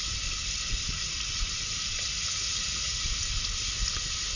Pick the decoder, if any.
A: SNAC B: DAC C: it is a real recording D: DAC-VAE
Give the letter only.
C